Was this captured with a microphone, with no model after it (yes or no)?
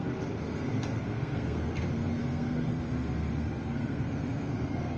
no